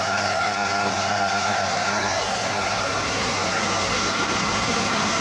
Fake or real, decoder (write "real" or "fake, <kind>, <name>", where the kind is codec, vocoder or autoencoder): fake, codec, SNAC